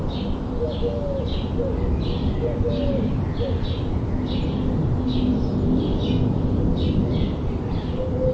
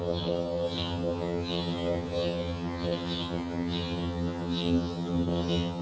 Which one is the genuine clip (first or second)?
first